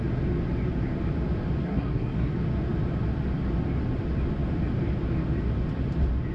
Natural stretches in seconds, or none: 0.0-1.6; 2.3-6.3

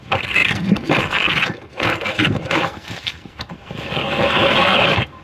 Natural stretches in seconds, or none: none

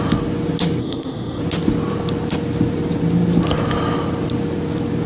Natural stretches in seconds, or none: 0.0-0.8; 1.4-5.1